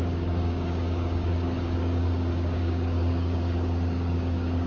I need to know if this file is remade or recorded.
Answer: remade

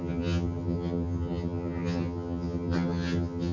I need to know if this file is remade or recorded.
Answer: remade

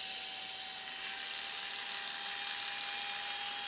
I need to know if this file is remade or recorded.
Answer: recorded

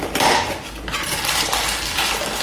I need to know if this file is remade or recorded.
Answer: recorded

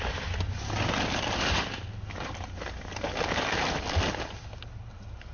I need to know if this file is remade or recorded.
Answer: recorded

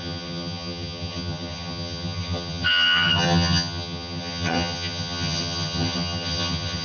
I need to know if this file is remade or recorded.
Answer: remade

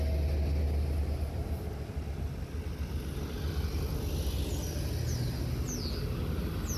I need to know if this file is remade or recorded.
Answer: recorded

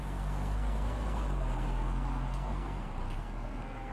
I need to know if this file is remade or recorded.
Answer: remade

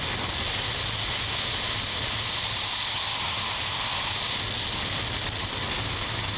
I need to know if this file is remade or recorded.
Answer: recorded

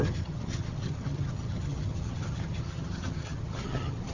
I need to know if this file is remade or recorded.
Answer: remade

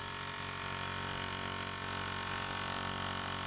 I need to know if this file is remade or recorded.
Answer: recorded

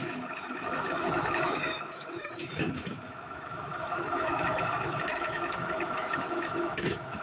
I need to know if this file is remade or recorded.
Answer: remade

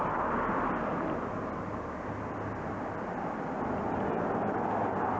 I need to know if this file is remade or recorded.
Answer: recorded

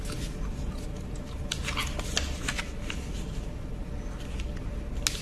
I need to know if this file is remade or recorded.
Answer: recorded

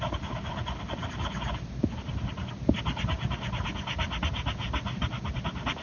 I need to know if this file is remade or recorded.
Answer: recorded